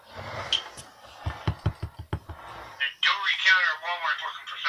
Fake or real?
real